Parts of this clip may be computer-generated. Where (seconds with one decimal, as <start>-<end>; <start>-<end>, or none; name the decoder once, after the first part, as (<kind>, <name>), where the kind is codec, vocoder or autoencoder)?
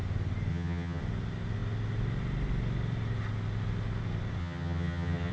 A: 0.5-1.0 (vocoder, HiFi-GAN); 4.4-5.3